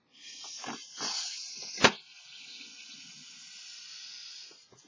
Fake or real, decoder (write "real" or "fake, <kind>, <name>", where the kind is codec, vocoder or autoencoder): real